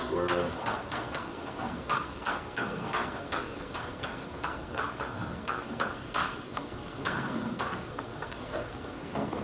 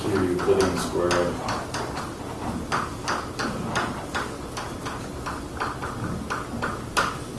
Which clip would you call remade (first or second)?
first